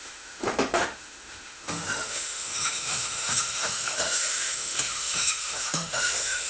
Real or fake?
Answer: fake